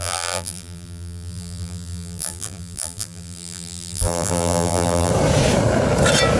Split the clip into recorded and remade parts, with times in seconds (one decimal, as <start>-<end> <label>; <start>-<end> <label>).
0.0-5.1 remade; 5.1-6.4 recorded